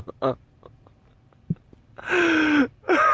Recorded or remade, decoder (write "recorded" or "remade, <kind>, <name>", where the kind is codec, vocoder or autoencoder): recorded